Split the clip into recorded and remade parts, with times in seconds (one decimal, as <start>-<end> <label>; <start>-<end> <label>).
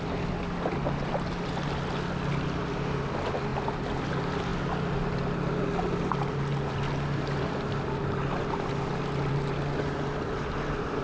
0.0-11.0 recorded